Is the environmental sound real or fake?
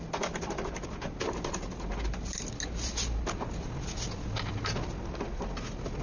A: real